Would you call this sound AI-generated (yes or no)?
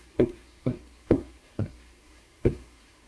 yes